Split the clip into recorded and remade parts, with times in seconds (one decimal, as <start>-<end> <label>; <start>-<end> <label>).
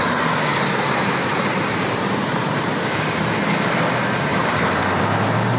0.0-0.5 recorded; 0.5-2.8 remade; 2.8-4.3 recorded; 4.3-5.0 remade; 5.0-5.6 recorded